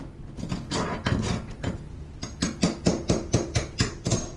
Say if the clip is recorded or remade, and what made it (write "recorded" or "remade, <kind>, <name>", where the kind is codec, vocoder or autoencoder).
recorded